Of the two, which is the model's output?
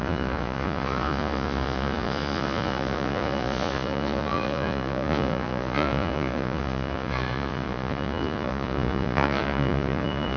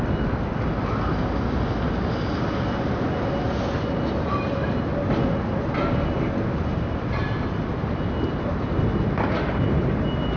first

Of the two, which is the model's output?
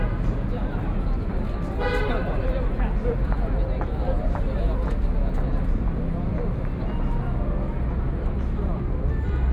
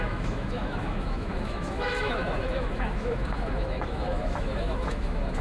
second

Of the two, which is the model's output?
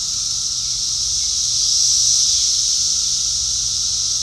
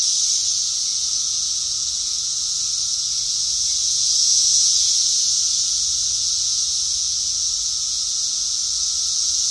second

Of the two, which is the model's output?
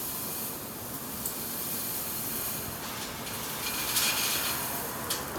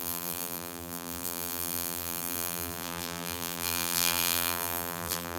second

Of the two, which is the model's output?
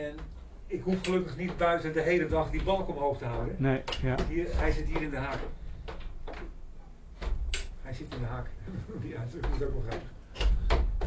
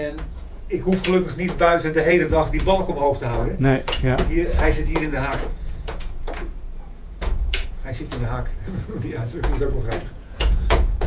second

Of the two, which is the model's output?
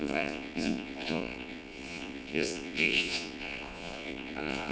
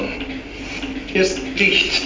first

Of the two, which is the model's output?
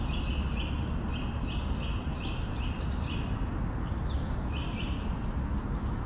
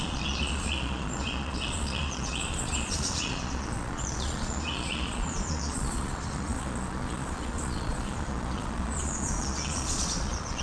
second